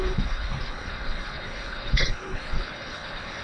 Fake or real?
fake